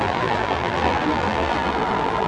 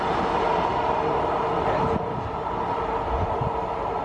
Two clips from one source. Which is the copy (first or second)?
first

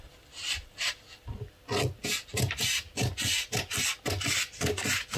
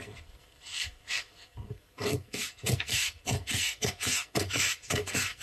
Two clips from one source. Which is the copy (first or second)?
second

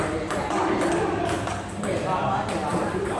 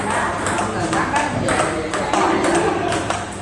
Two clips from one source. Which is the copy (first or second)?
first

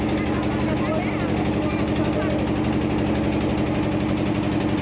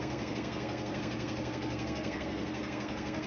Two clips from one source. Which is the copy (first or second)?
second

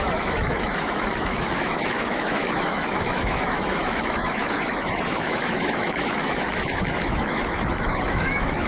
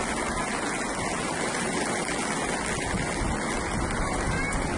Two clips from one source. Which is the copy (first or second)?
first